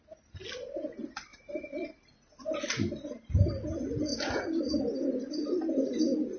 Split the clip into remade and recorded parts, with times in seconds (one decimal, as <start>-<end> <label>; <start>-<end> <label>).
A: 0.0-1.3 recorded; 1.3-2.5 remade; 2.5-6.4 recorded